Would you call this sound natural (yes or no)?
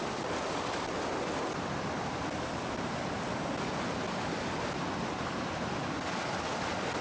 yes